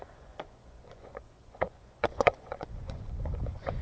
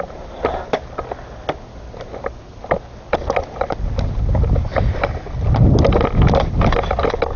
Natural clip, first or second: second